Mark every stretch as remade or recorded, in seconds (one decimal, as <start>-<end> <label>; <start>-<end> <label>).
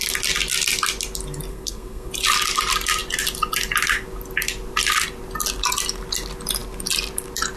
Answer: 0.0-1.5 recorded; 1.5-2.1 remade; 2.1-7.6 recorded